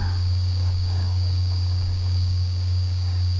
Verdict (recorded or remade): remade